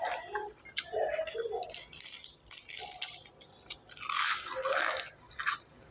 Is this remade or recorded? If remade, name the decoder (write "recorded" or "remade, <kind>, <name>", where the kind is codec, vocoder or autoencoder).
recorded